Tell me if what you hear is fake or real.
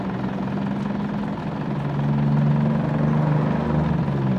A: real